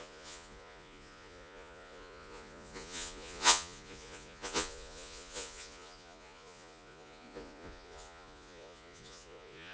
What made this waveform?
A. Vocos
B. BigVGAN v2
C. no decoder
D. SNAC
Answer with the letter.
A